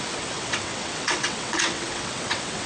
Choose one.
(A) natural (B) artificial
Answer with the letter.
B